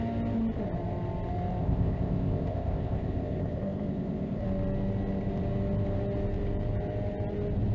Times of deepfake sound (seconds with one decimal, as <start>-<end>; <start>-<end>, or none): 1.6-4.4